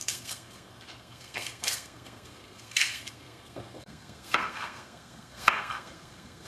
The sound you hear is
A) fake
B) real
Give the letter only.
A